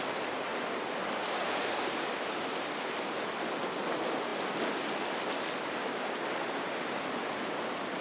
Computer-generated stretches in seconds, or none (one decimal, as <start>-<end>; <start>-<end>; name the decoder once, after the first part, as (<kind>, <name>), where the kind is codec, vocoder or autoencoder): none